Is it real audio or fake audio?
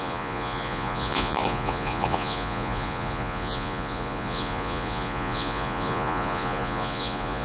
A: fake